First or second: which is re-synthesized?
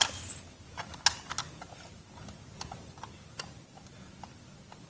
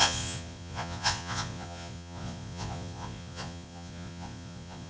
second